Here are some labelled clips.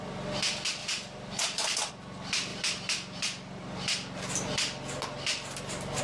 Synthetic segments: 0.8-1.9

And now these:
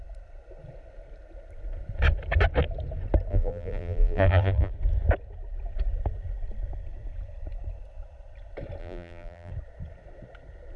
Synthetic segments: 3.3-4.7; 8.8-9.5

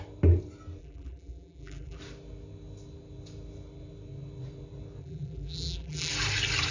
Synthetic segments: 0.8-2.0; 5.0-6.1